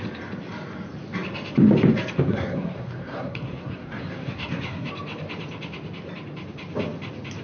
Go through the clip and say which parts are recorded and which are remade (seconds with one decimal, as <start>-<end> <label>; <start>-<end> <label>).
0.0-2.3 recorded; 2.3-4.9 remade; 4.9-7.4 recorded